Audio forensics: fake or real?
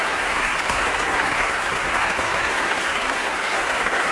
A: fake